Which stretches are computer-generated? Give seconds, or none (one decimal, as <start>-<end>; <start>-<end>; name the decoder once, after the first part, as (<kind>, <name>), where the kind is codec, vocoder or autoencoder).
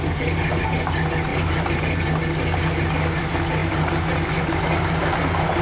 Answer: 1.3-1.8 (vocoder, BigVGAN v2); 3.6-5.0